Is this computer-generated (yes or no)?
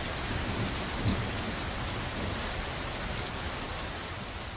no